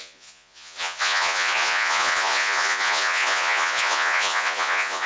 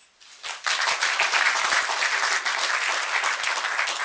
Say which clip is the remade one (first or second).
first